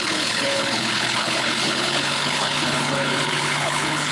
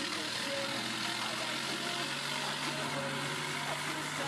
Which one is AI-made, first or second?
first